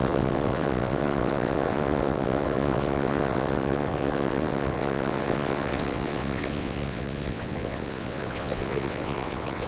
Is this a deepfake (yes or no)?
yes